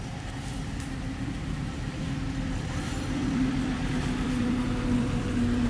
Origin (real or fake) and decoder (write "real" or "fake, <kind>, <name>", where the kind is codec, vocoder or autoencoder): fake, vocoder, BigVGAN v2